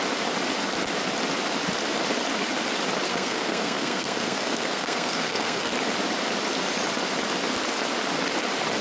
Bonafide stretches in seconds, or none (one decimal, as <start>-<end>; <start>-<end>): 0.0-3.1; 5.7-8.8

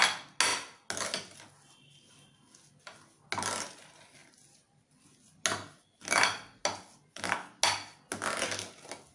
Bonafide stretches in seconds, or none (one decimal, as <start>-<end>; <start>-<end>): 0.0-9.1